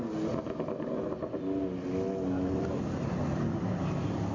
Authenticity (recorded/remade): recorded